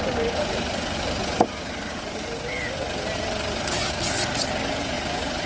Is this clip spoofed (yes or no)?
no